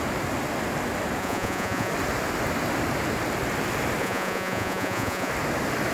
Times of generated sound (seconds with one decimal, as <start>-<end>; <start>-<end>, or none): 1.2-1.9; 4.0-5.3